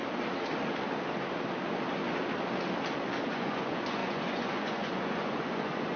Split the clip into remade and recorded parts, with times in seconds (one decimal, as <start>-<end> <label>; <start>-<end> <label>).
0.0-3.3 recorded; 3.3-6.0 remade